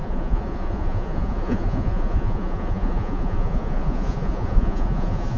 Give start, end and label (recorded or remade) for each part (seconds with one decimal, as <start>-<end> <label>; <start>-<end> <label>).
0.0-5.4 remade